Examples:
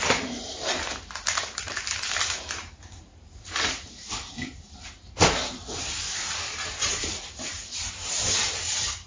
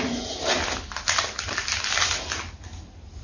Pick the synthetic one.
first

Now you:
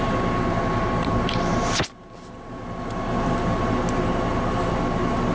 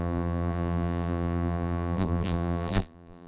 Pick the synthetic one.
second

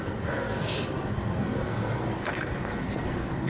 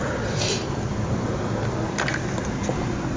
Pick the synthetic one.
first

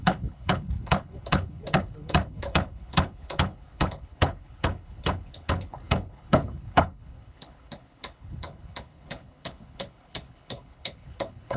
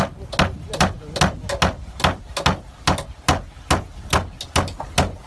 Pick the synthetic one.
first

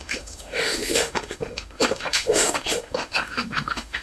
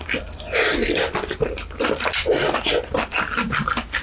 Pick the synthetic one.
first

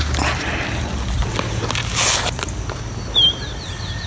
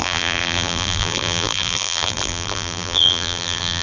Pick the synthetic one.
second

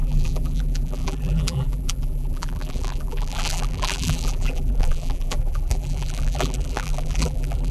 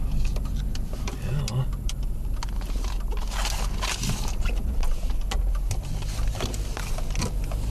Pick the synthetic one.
first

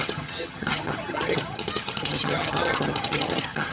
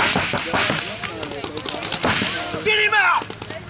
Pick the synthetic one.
first